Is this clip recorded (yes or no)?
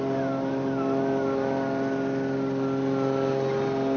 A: yes